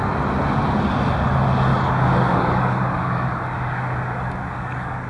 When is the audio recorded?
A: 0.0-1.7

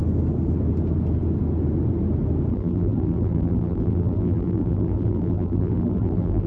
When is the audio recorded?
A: 0.0-2.5

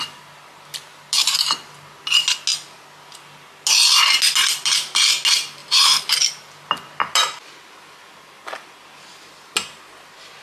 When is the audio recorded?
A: 0.0-10.4